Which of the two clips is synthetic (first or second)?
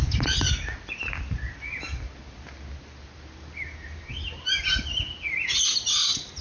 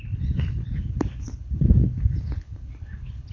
second